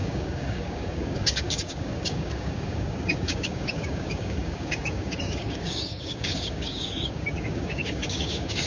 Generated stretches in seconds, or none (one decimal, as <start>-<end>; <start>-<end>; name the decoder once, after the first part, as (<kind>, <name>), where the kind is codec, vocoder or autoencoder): 0.0-8.7 (codec, DAC)